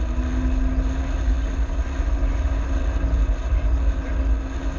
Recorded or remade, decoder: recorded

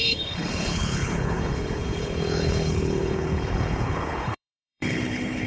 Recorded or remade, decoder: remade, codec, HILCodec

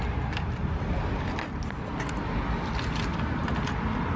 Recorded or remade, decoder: recorded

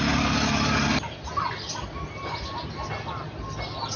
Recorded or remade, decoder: recorded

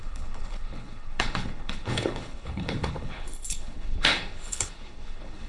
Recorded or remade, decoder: remade, codec, HILCodec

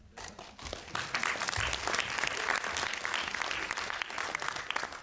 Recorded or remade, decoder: recorded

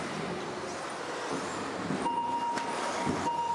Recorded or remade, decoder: recorded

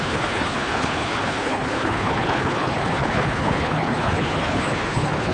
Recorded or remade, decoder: remade, codec, HILCodec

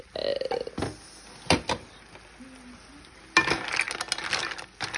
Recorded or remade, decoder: recorded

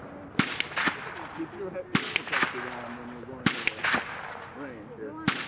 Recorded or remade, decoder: recorded